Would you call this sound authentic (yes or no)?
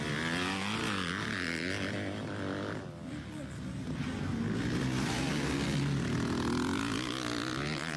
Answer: yes